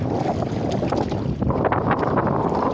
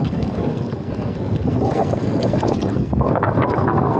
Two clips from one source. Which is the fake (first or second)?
second